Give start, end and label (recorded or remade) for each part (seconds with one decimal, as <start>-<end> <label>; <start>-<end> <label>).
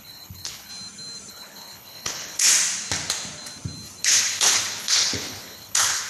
0.0-0.7 remade; 0.7-1.3 recorded; 1.3-2.5 remade; 2.5-4.0 recorded; 4.0-6.1 remade